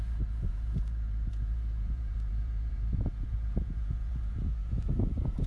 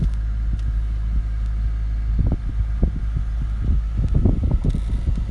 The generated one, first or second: first